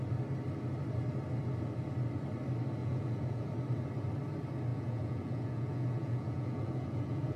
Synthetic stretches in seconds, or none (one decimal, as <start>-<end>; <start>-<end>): 2.8-3.5; 4.7-7.4